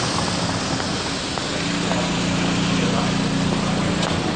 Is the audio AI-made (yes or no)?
no